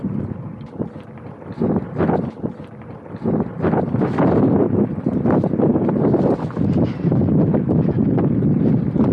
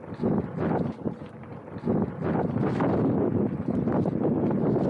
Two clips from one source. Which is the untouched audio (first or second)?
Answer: second